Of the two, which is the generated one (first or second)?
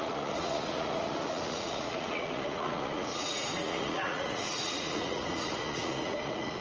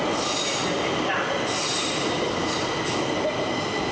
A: first